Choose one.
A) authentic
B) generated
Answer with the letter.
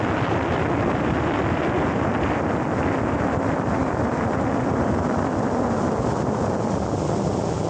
A